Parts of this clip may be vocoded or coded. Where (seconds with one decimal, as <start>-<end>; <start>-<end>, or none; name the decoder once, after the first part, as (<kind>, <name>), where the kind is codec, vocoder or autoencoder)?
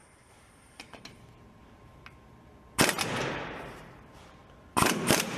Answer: 0.0-1.9 (vocoder, BigVGAN v2); 3.3-4.4; 4.9-5.4